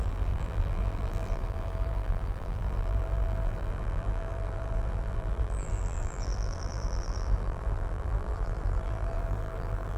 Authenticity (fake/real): fake